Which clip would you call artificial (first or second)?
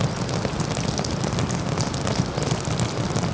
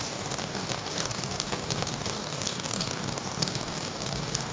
second